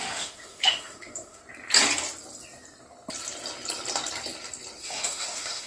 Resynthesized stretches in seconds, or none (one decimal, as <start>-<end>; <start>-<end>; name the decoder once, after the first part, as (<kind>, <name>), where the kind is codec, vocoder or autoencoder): 0.0-1.4 (autoencoder, DAC-VAE); 4.8-5.7